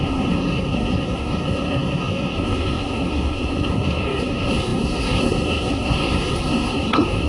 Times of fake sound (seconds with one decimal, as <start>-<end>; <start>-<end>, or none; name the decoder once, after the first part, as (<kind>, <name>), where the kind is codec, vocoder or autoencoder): 0.0-7.3 (codec, SNAC)